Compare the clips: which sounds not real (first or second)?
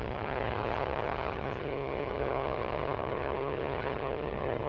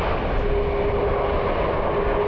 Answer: first